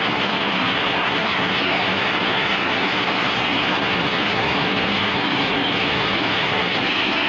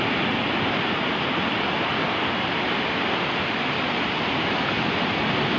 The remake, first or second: first